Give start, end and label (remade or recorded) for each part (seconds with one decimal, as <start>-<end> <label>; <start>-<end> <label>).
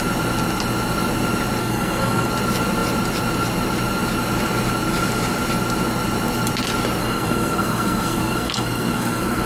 0.0-1.6 recorded; 1.6-2.3 remade; 2.3-7.0 recorded; 7.0-9.5 remade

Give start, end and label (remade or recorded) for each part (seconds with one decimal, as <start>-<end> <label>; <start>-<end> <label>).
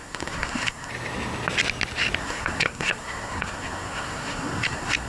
0.0-0.9 remade; 0.9-2.2 recorded; 2.2-5.1 remade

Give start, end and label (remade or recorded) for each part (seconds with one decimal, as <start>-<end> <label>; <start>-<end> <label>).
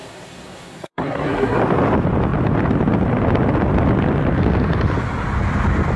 0.0-1.6 remade; 1.6-6.0 recorded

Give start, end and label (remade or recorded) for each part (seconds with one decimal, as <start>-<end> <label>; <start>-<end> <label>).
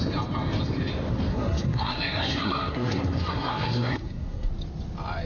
0.0-1.3 recorded; 1.3-4.5 remade; 4.5-5.3 recorded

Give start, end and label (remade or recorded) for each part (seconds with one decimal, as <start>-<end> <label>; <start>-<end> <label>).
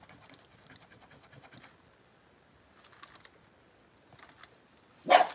0.0-5.3 recorded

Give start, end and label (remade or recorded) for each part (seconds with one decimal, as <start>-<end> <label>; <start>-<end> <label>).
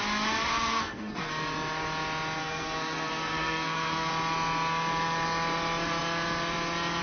0.0-0.5 recorded; 0.5-1.3 remade; 1.3-2.4 recorded; 2.4-4.1 remade; 4.1-7.0 recorded